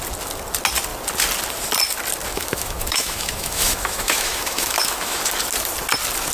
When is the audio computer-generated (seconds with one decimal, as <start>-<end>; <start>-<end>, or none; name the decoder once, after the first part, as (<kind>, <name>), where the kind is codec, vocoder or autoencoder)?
2.3-5.2 (autoencoder, DAC-VAE)